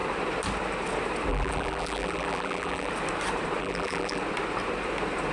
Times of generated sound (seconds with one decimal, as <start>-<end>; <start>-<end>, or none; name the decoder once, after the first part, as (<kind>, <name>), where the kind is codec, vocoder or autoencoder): 1.3-2.9 (vocoder, BigVGAN v2); 3.6-4.2